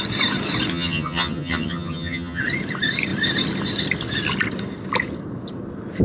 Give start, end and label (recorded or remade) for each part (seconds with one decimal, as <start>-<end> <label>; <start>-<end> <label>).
0.0-0.7 recorded; 0.7-2.4 remade; 2.4-6.0 recorded